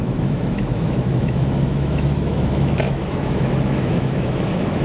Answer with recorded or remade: remade